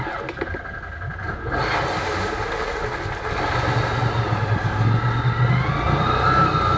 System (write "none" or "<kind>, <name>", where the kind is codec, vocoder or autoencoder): none